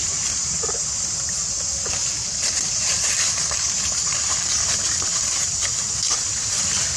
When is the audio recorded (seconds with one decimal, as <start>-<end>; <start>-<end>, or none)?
0.6-2.2; 5.2-7.0